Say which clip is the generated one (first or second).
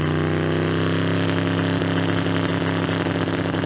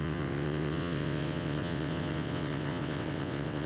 second